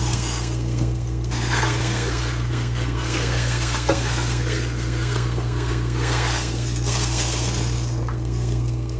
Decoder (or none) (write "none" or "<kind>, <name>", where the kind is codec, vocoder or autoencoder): codec, SNAC